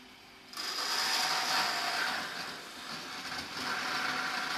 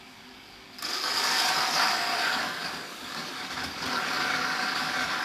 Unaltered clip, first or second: first